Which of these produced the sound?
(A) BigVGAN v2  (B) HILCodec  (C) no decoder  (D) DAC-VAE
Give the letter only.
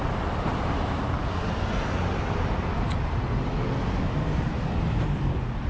C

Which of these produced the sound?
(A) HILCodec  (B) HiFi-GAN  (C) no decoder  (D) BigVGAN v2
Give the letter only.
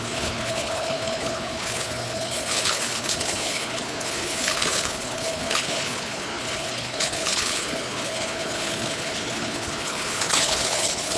A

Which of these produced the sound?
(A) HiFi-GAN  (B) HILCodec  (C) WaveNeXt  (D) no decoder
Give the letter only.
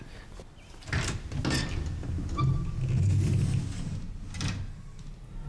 D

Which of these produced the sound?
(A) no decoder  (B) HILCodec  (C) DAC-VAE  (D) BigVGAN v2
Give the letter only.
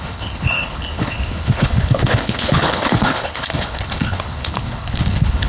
B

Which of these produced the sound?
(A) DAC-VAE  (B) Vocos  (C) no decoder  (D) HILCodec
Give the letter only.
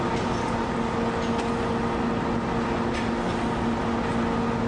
C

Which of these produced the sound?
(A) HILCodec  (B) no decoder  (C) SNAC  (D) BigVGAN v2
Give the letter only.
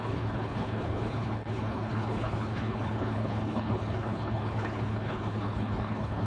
A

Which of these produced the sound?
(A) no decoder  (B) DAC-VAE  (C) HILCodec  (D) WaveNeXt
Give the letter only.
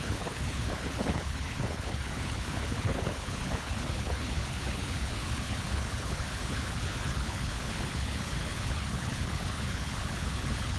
C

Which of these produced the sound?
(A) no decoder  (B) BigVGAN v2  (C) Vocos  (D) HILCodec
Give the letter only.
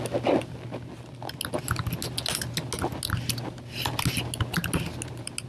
A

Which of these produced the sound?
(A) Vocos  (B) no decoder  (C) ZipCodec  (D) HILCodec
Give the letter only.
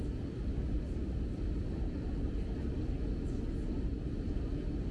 B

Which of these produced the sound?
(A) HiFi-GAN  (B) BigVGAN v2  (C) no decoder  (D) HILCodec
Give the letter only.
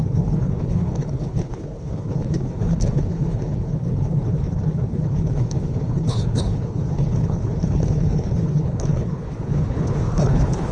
D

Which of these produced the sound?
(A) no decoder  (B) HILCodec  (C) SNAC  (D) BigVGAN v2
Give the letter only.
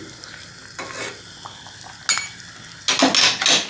A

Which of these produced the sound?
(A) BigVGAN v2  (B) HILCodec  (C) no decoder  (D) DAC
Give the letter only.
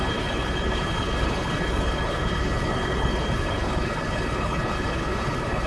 B